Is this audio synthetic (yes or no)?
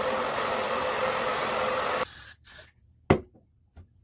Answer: no